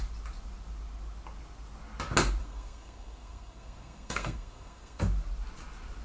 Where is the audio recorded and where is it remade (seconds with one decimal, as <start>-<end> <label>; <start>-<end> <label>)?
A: 0.0-2.4 recorded; 2.4-5.0 remade; 5.0-6.0 recorded